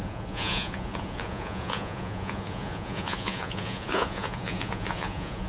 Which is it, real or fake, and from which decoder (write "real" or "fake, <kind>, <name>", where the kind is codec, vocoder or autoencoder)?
fake, vocoder, Vocos